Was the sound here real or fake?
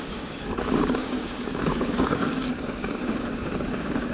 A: fake